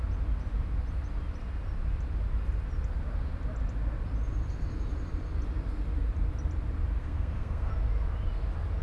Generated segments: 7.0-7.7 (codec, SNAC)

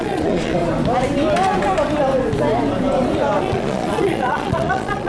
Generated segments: 0.0-0.6 (vocoder, Vocos); 3.4-5.1

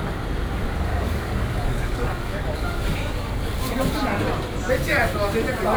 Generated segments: 0.9-3.8 (codec, DAC)

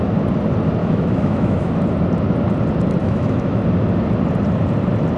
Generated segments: 0.8-1.7 (autoencoder, DAC-VAE); 3.0-3.6

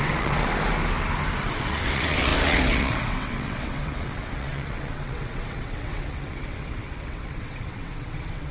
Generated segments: 0.0-0.5 (vocoder, WaveNeXt); 1.4-8.5

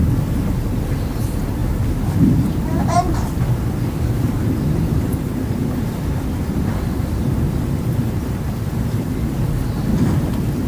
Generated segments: none

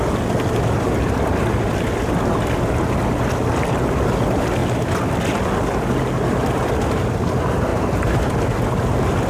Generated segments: none

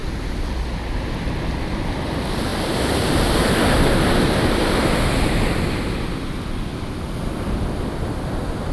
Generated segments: none